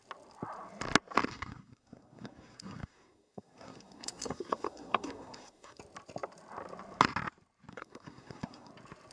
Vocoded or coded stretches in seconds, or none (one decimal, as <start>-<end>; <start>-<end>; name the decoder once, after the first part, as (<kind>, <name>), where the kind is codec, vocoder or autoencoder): 1.3-5.8 (codec, SNAC); 7.7-8.7